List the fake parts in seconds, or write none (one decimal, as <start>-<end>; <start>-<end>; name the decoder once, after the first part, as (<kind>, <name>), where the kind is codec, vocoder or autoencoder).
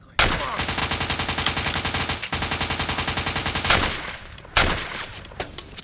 3.4-5.8 (vocoder, BigVGAN v2)